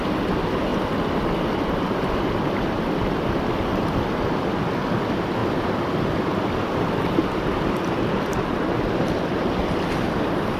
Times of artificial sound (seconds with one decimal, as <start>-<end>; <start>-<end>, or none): none